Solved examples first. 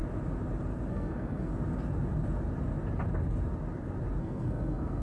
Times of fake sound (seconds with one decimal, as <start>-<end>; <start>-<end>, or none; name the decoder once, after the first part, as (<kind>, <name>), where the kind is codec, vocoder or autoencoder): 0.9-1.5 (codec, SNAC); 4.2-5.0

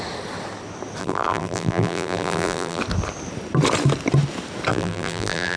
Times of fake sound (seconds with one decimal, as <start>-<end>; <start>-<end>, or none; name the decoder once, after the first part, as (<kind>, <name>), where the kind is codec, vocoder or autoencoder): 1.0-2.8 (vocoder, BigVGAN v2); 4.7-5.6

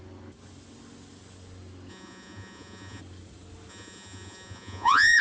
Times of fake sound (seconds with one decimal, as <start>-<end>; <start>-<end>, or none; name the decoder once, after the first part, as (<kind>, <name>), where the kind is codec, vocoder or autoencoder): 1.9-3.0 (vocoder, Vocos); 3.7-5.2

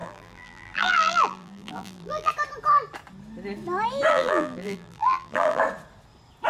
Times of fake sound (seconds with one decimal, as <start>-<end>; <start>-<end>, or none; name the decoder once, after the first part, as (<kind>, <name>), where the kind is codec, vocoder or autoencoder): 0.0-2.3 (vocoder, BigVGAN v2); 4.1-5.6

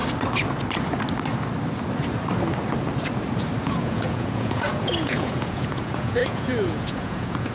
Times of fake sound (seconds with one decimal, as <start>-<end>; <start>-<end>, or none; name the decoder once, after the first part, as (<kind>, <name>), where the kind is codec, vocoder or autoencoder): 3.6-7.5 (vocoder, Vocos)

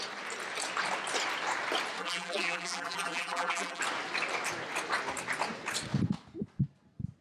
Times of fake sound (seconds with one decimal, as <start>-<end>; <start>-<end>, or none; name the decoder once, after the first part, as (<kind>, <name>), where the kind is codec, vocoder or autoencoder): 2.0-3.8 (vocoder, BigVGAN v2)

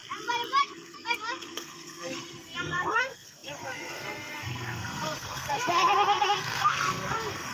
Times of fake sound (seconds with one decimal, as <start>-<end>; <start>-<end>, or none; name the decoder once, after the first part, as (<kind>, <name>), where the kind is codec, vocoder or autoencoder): 0.6-7.5 (codec, SNAC)

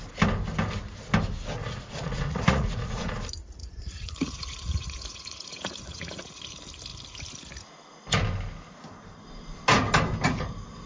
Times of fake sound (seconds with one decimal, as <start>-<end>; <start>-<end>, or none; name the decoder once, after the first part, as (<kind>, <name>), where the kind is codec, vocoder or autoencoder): 1.6-3.1 (vocoder, Vocos); 3.6-6.4